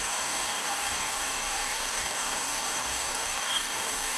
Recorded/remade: remade